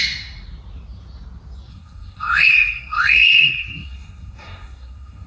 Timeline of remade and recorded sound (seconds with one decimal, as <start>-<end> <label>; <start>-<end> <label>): 0.0-1.7 recorded; 1.7-5.3 remade